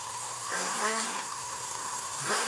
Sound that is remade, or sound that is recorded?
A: remade